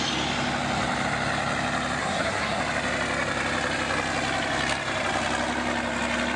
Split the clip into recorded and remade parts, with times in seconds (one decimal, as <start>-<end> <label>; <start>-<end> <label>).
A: 0.0-2.0 recorded; 2.0-2.6 remade; 2.6-6.4 recorded